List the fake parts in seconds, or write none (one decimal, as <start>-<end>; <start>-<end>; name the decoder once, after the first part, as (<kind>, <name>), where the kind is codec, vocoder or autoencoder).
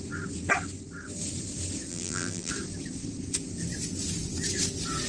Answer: 1.9-2.5 (vocoder, BigVGAN v2)